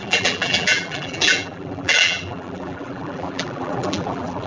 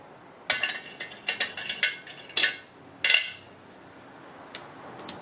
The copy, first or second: first